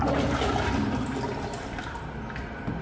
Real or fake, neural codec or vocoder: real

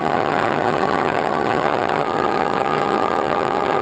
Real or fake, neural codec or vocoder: fake, vocoder, HiFi-GAN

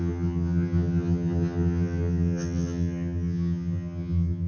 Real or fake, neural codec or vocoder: fake, vocoder, HiFi-GAN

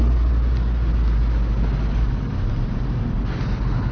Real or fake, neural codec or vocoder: real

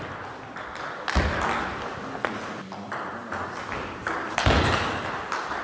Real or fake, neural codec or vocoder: real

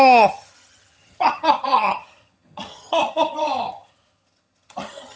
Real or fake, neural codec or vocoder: fake, vocoder, HiFi-GAN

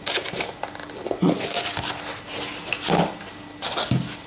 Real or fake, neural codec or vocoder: real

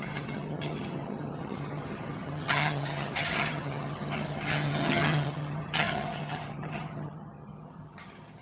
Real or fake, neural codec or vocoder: fake, vocoder, HiFi-GAN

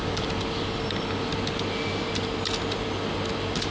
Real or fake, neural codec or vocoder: real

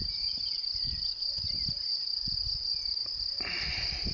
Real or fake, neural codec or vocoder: real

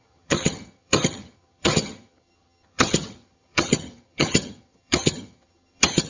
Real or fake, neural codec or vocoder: fake, vocoder, HiFi-GAN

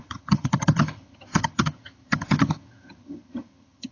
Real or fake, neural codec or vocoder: fake, vocoder, HiFi-GAN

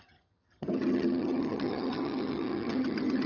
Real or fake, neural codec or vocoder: fake, vocoder, HiFi-GAN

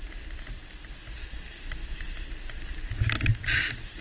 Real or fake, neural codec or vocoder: real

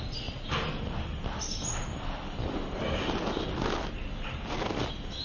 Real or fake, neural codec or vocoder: real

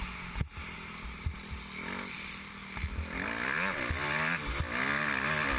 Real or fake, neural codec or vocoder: real